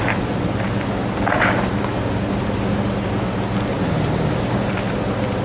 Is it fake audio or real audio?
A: real